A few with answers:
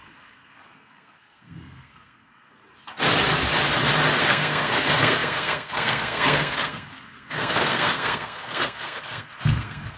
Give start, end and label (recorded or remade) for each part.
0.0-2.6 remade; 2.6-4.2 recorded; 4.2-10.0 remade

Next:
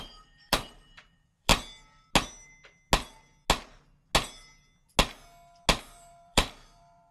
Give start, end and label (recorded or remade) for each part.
0.0-1.5 remade; 1.5-5.8 recorded; 5.8-7.1 remade

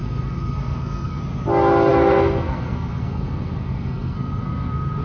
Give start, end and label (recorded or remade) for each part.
0.0-1.2 remade; 1.2-1.9 recorded; 1.9-5.0 remade

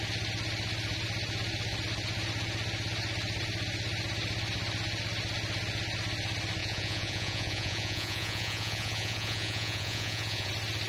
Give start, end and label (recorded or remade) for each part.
0.0-6.6 recorded; 6.6-10.5 remade; 10.5-10.9 recorded

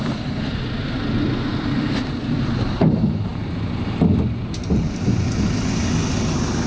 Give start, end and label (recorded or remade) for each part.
0.0-6.7 recorded

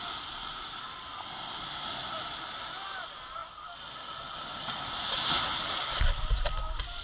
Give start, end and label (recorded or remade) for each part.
0.0-7.0 recorded

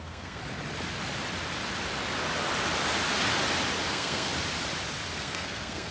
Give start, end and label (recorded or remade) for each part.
0.0-0.4 remade; 0.4-3.9 recorded; 3.9-4.3 remade; 4.3-5.2 recorded; 5.2-5.9 remade